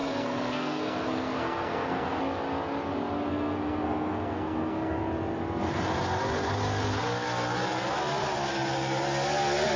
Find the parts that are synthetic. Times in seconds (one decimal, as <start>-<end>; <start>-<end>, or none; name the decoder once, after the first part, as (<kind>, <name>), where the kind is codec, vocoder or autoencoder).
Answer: 0.0-2.2 (codec, SNAC); 3.3-5.0